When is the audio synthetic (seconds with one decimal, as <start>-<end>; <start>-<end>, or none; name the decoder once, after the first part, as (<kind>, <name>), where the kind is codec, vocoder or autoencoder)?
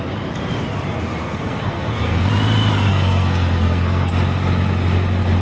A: 1.2-2.3 (codec, SNAC); 2.9-4.1